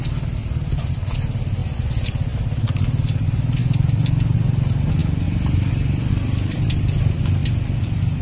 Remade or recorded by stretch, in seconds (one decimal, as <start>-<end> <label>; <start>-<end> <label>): 0.0-8.2 recorded